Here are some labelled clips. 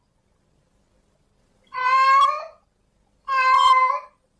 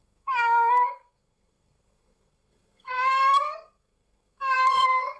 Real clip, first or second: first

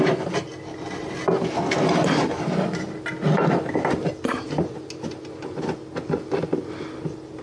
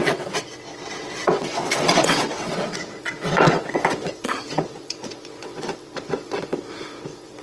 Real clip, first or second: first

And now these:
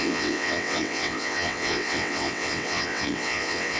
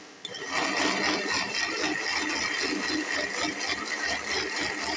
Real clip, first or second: second